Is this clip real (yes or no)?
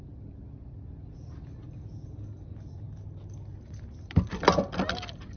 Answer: yes